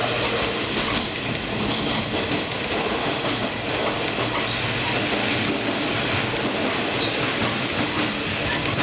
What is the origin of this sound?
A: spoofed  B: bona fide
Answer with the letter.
B